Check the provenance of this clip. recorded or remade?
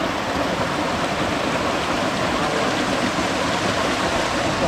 recorded